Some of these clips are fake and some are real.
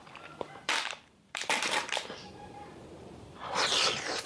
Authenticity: fake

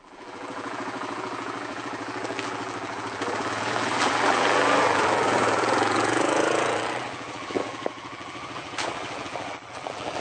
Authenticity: fake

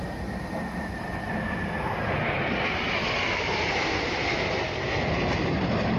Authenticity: real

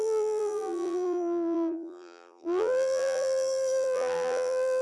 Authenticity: fake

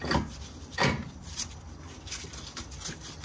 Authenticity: fake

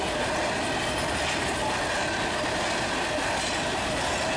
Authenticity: real